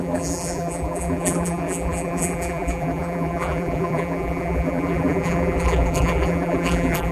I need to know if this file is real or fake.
fake